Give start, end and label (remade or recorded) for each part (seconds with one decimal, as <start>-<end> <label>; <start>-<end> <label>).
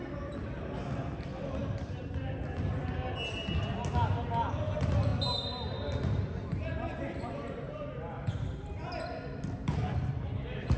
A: 0.0-2.8 remade; 2.8-4.5 recorded; 4.5-5.1 remade; 5.1-7.0 recorded; 7.0-10.8 remade